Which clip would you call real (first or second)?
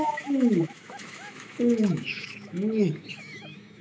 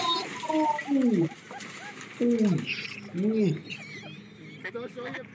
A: second